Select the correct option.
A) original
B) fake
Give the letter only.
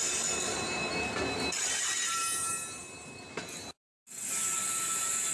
A